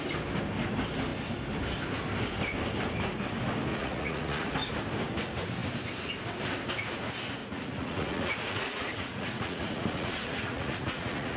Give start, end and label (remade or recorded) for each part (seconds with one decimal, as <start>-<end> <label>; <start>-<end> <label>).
0.0-3.7 recorded; 3.7-4.5 remade; 4.5-7.4 recorded; 7.4-11.4 remade